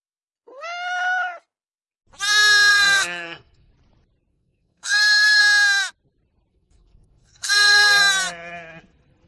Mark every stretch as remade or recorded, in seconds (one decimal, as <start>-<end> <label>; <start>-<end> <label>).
0.0-2.7 recorded; 2.7-3.7 remade; 3.7-4.3 recorded; 4.3-5.4 remade; 5.4-6.5 recorded; 6.5-8.0 remade; 8.0-9.3 recorded